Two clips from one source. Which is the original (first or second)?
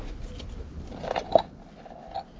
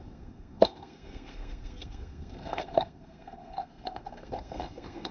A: first